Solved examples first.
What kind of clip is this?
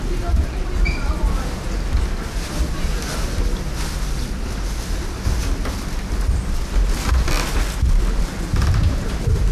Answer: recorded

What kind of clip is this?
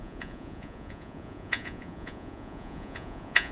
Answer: remade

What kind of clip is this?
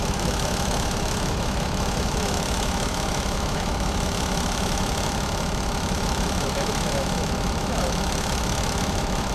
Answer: remade